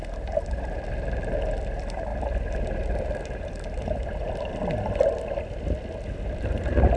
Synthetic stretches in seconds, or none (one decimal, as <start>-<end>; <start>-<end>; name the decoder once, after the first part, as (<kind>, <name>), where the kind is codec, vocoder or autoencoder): none